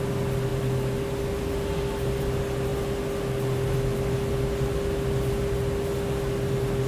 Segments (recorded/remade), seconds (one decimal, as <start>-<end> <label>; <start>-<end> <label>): 0.0-6.9 recorded